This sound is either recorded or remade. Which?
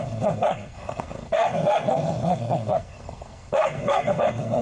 remade